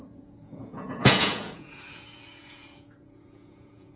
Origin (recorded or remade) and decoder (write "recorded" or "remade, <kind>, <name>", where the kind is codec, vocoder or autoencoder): remade, vocoder, Vocos